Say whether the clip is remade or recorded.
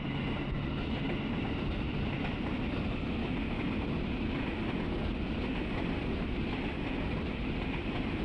recorded